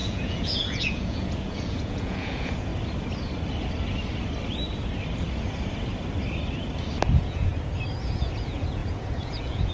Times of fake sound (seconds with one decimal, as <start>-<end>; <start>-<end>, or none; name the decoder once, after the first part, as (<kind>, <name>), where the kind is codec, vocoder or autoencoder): 0.0-2.7 (vocoder, Vocos); 7.1-7.5; 8.0-9.7